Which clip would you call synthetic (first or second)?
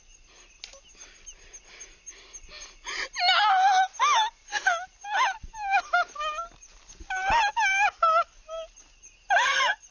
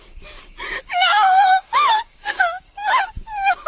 second